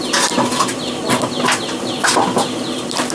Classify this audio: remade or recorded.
recorded